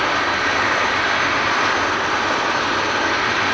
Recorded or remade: recorded